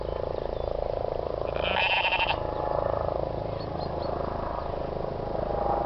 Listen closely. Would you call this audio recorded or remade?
recorded